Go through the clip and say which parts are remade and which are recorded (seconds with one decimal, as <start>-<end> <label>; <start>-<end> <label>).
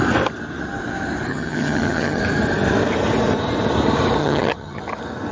0.0-1.3 recorded; 1.3-2.2 remade; 2.2-4.2 recorded; 4.2-4.8 remade; 4.8-5.3 recorded